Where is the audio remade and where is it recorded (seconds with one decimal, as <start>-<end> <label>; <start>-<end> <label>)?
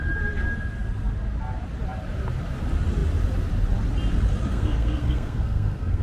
0.0-4.5 recorded; 4.5-6.0 remade